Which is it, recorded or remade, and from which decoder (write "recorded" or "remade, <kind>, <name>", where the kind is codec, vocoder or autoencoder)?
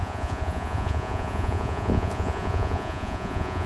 remade, vocoder, Vocos